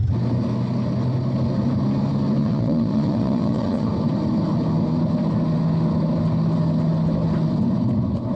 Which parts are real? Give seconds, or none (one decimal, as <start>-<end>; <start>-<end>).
0.0-2.4; 3.9-8.4